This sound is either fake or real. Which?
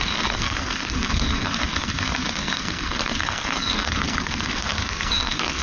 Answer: fake